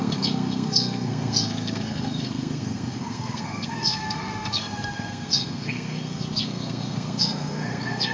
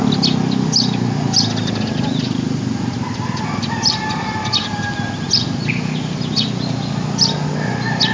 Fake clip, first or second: first